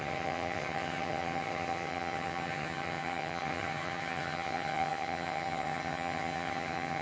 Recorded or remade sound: remade